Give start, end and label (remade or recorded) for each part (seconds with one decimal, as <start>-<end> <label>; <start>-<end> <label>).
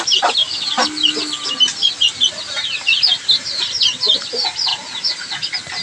0.0-3.1 recorded; 3.1-4.0 remade; 4.0-4.7 recorded; 4.7-5.3 remade; 5.3-5.8 recorded